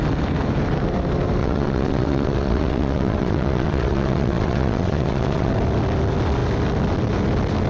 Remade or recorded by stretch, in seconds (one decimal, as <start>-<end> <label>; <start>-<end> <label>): 0.0-1.4 recorded; 1.4-5.5 remade; 5.5-7.7 recorded